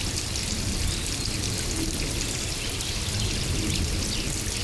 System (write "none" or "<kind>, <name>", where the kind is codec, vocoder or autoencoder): none